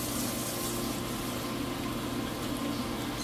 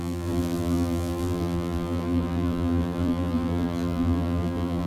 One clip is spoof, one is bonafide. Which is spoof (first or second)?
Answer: second